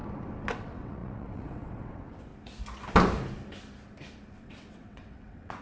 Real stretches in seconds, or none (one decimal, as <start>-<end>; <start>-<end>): 0.0-0.5; 2.3-4.3